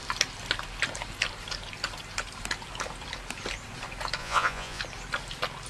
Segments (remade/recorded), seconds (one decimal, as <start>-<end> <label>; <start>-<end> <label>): 0.0-4.2 recorded; 4.2-4.8 remade; 4.8-5.7 recorded